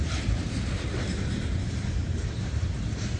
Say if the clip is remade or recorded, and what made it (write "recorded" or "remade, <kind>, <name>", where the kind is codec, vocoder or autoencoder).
remade, vocoder, BigVGAN v2